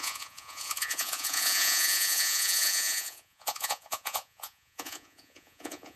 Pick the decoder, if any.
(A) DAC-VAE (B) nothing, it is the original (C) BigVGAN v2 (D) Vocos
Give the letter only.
D